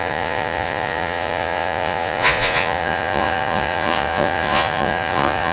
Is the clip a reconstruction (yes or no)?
yes